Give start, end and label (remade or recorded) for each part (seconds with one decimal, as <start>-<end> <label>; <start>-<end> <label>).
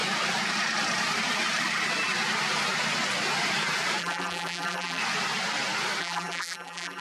0.0-4.0 recorded; 4.0-5.0 remade; 5.0-6.0 recorded; 6.0-7.0 remade